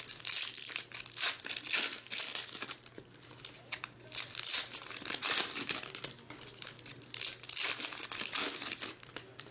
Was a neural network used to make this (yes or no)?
no